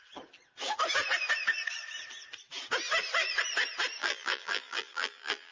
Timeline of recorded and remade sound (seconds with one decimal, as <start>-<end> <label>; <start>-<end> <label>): 0.0-4.0 recorded; 4.0-5.5 remade